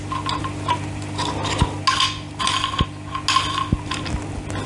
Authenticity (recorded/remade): recorded